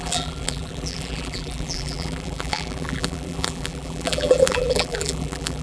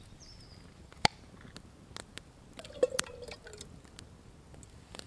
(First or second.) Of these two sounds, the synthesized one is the first